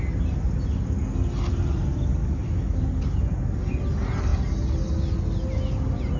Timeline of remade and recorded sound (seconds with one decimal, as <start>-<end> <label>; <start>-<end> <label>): 0.0-2.2 recorded; 2.2-2.8 remade; 2.8-6.2 recorded